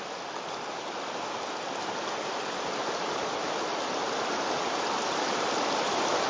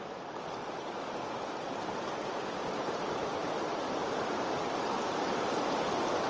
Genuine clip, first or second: second